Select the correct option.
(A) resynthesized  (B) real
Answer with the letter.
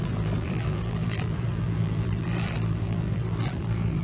A